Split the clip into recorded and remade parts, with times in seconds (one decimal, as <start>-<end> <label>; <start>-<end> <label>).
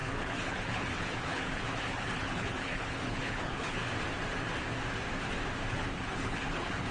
0.0-3.8 remade; 3.8-5.7 recorded; 5.7-6.9 remade